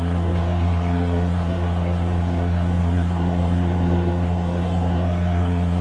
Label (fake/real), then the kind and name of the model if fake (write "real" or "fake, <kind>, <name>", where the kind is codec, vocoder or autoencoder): fake, codec, SNAC